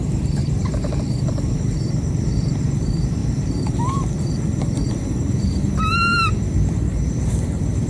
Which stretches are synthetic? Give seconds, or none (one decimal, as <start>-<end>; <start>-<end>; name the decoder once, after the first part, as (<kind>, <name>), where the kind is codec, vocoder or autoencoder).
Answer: 0.0-7.9 (vocoder, BigVGAN v2)